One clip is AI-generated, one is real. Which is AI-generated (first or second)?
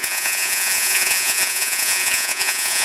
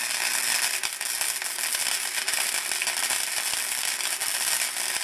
first